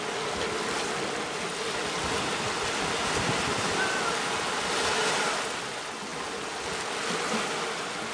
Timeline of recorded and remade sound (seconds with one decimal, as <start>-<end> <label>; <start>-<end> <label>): 0.0-8.1 recorded